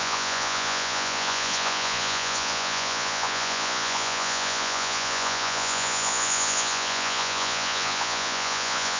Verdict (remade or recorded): remade